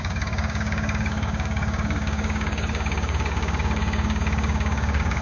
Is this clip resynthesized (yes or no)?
yes